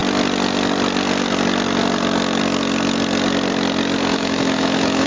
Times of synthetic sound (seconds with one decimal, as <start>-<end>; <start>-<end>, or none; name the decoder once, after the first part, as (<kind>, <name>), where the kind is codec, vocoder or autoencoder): 4.1-5.1 (autoencoder, DAC-VAE)